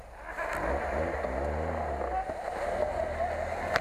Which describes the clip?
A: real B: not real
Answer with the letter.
A